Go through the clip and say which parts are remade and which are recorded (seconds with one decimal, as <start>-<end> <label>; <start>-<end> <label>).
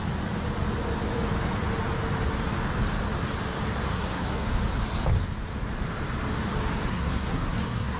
0.0-3.9 recorded; 3.9-4.5 remade; 4.5-6.9 recorded; 6.9-8.0 remade